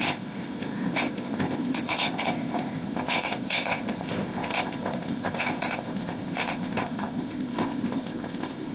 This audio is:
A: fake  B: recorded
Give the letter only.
A